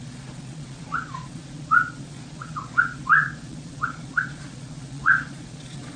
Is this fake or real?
fake